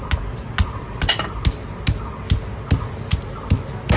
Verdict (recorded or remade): recorded